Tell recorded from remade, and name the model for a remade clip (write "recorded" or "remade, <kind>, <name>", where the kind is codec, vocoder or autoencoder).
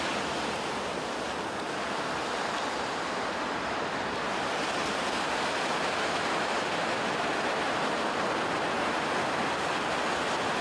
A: recorded